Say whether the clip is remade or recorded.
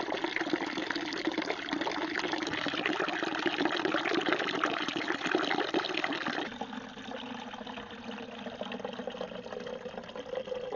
recorded